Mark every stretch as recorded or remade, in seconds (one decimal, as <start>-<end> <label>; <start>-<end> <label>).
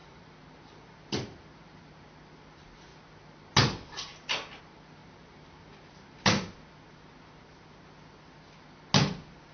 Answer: 0.0-0.8 remade; 0.8-5.0 recorded; 5.0-6.5 remade; 6.5-9.5 recorded